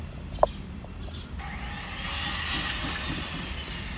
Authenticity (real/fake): real